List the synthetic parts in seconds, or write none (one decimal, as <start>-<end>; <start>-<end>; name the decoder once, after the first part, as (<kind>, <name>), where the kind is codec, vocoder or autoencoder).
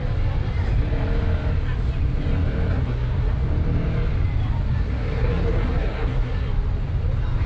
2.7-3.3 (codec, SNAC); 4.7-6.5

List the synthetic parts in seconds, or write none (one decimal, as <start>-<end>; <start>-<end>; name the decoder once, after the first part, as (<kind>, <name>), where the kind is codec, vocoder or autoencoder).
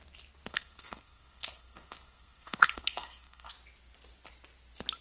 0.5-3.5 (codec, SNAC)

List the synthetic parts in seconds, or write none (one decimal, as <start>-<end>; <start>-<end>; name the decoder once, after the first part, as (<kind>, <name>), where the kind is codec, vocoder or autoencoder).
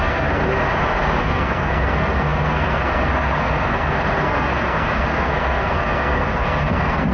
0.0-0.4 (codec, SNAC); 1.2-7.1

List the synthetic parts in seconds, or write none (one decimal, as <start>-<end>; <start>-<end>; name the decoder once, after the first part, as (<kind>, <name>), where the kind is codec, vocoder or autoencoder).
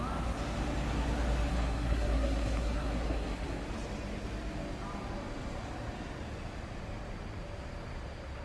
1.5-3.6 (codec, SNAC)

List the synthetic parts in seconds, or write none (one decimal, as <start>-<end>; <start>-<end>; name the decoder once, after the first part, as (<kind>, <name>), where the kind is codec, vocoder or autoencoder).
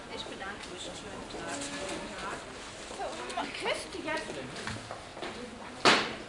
none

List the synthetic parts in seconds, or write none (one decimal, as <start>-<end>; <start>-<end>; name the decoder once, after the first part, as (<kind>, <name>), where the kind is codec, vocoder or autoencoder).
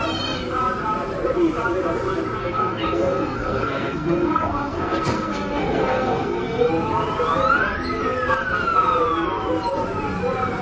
2.4-6.7 (codec, SNAC)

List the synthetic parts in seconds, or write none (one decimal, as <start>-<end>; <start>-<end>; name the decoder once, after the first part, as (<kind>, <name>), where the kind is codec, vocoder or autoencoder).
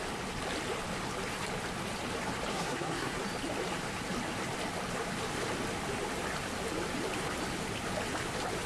2.5-3.2 (codec, SNAC)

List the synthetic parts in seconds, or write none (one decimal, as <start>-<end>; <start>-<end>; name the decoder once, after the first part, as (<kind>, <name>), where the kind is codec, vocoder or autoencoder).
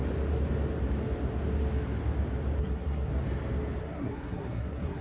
2.6-3.1 (codec, SNAC); 3.8-5.0